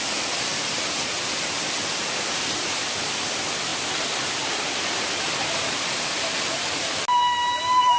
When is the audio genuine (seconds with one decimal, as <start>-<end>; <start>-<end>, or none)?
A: 0.0-8.0